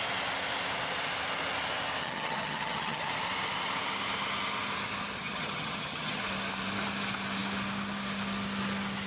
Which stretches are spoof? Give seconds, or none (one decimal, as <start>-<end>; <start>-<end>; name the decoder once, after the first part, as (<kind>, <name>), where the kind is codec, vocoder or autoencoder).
2.0-3.1 (vocoder, HiFi-GAN); 5.2-6.2